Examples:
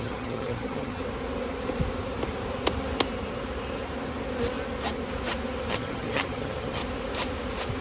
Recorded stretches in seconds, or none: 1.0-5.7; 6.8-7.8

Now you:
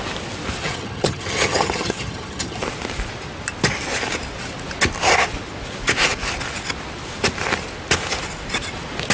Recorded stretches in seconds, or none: 0.0-0.6; 2.6-9.1

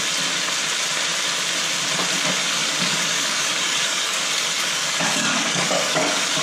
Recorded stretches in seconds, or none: 0.0-2.4

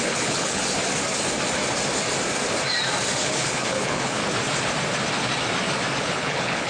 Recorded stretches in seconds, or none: 0.6-3.2; 4.2-6.0

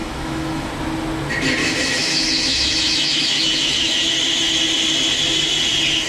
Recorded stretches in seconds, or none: 0.7-1.6; 3.9-6.1

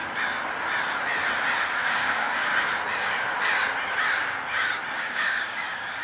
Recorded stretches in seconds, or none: 0.0-1.6; 2.5-5.0